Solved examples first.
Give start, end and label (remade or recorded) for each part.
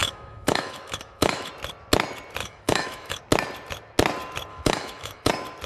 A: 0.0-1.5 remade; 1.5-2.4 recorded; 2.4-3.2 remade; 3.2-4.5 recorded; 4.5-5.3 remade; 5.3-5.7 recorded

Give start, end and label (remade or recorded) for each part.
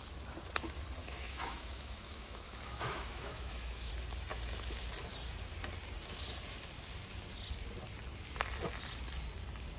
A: 0.0-1.0 recorded; 1.0-3.9 remade; 3.9-9.8 recorded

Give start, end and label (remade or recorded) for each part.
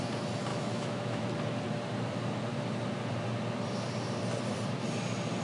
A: 0.0-0.5 recorded; 0.5-1.2 remade; 1.2-5.4 recorded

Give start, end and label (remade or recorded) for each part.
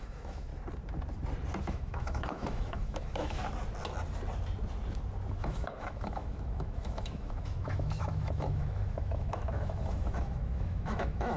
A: 0.0-0.5 remade; 0.5-1.6 recorded; 1.6-3.4 remade; 3.4-5.3 recorded; 5.3-11.4 remade